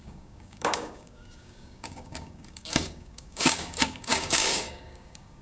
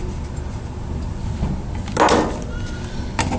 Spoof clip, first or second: first